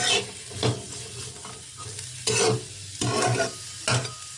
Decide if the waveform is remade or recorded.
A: recorded